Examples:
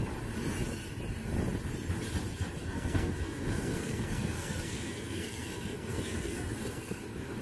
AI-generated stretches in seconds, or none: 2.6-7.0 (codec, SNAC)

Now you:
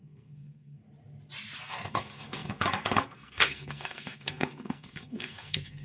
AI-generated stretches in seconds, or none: 0.0-0.8 (codec, SNAC); 1.6-5.8

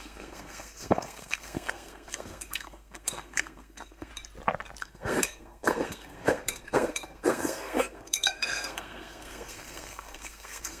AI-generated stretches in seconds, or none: 0.0-4.1 (codec, SNAC); 4.8-10.8

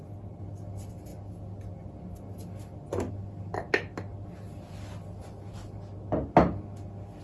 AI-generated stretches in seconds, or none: none